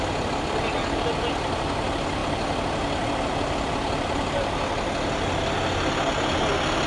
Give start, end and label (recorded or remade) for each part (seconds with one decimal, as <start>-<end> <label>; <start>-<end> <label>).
0.0-6.9 recorded